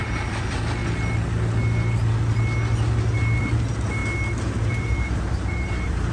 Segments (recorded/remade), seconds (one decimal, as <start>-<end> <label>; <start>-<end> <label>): 0.0-0.8 remade; 0.8-3.4 recorded; 3.4-4.0 remade; 4.0-4.5 recorded; 4.5-6.1 remade

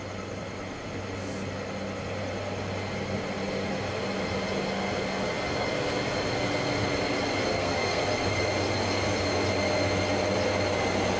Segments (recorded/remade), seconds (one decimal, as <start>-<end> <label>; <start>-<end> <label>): 0.0-7.5 recorded; 7.5-8.0 remade; 8.0-11.2 recorded